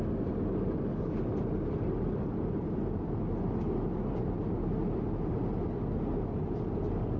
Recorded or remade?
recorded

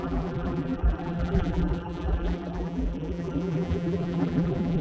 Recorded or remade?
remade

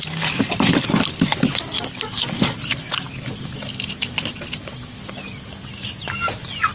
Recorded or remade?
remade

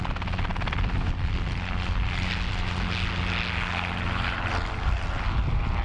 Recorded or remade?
recorded